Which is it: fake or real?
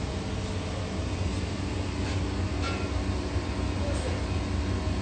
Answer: real